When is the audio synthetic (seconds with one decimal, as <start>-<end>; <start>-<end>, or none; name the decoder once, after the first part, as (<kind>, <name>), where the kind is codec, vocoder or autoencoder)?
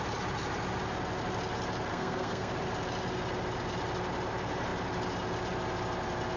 1.9-2.5 (codec, SNAC)